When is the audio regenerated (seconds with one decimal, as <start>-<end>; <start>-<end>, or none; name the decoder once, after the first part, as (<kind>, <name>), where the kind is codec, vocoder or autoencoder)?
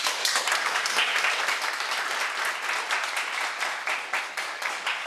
0.0-1.1 (codec, DAC); 4.2-5.1